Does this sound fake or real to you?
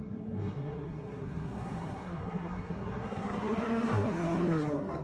fake